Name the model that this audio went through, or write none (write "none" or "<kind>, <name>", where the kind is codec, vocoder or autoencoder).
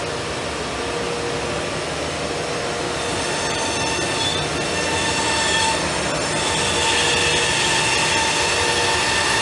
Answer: none